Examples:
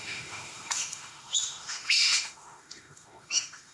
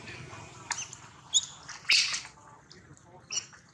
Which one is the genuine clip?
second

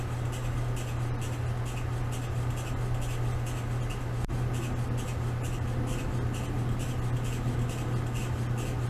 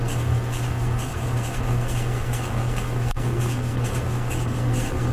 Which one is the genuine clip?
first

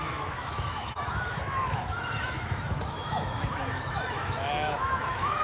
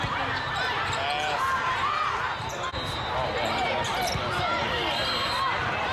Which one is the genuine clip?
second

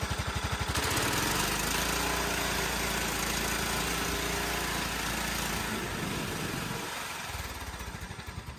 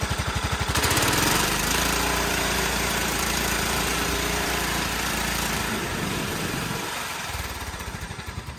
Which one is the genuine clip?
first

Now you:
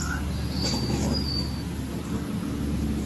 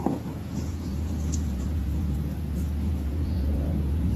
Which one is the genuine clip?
first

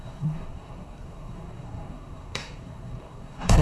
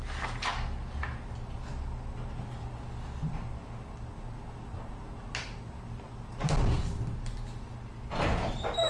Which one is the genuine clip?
second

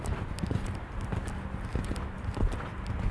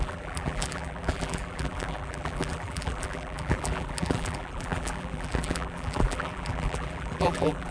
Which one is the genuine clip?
first